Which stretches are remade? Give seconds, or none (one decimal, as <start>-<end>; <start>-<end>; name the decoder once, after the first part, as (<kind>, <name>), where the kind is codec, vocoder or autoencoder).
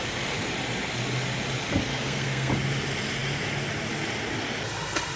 1.9-2.5 (codec, SNAC)